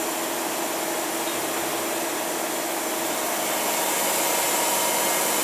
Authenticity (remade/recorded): recorded